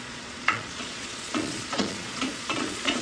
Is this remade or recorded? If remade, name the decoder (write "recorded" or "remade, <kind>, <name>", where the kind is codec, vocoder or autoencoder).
remade, vocoder, Vocos